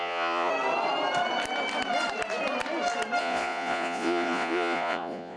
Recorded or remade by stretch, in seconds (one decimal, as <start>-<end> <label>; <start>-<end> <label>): 0.0-0.5 remade; 0.5-3.2 recorded; 3.2-5.4 remade